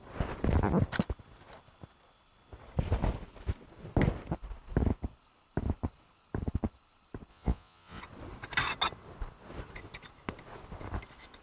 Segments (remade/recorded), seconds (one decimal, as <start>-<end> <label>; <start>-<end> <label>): 0.0-7.3 recorded; 7.3-8.0 remade; 8.0-11.4 recorded